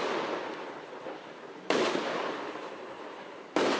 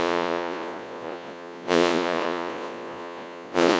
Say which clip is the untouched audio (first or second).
first